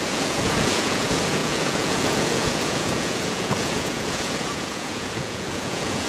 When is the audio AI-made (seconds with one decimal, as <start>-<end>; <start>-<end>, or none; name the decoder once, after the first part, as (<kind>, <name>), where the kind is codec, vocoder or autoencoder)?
0.0-6.1 (vocoder, Vocos)